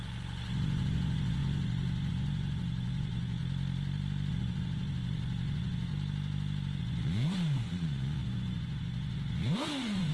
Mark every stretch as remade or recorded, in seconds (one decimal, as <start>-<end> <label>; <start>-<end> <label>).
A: 0.0-3.4 remade; 3.4-4.3 recorded; 4.3-5.9 remade; 5.9-6.8 recorded; 6.8-10.1 remade